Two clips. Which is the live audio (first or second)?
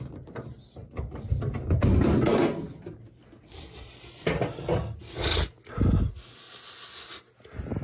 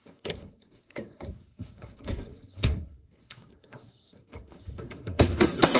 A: first